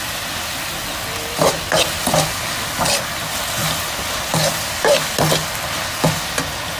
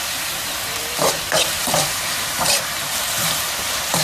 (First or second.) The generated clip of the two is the second